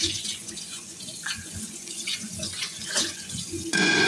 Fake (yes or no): yes